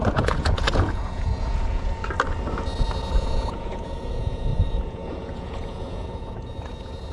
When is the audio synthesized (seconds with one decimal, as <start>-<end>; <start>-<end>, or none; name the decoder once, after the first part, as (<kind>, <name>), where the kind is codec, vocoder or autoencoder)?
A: 0.0-2.0 (vocoder, Vocos); 3.2-7.1